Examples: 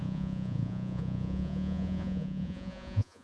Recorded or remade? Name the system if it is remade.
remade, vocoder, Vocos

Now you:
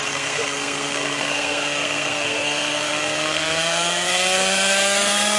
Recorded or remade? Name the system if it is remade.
remade, codec, SNAC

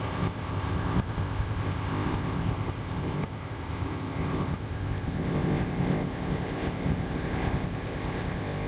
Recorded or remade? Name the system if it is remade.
remade, codec, ZipCodec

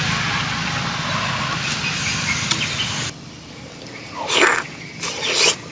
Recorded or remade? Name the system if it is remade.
recorded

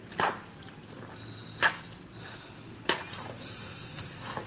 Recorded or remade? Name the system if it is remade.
recorded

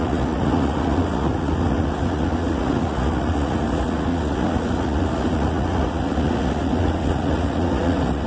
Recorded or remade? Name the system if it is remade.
remade, vocoder, Vocos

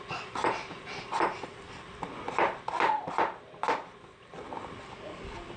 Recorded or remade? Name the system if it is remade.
recorded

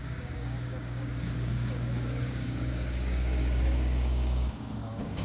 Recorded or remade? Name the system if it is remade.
remade, codec, DAC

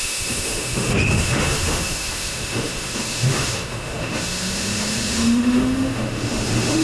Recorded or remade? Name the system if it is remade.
remade, autoencoder, DAC-VAE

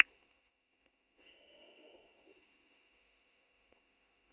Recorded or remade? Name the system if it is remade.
remade, autoencoder, DAC-VAE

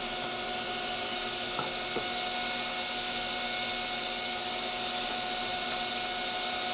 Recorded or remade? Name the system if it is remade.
recorded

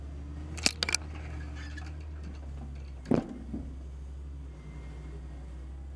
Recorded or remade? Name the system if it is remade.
recorded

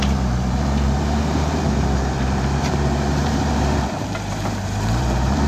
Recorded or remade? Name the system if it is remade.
remade, vocoder, BigVGAN v2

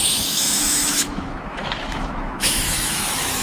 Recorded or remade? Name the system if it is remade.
remade, autoencoder, DAC-VAE